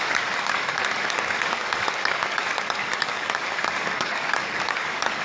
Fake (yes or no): yes